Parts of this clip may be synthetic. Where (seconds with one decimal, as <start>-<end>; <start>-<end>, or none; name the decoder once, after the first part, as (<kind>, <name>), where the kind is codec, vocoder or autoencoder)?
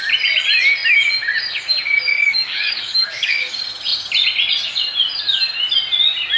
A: 2.1-3.5 (codec, DAC)